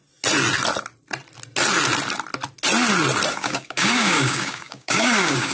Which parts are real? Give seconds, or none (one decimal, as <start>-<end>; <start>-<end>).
0.0-3.3

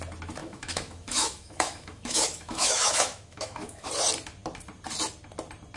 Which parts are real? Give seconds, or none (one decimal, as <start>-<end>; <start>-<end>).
0.0-0.4; 3.9-5.8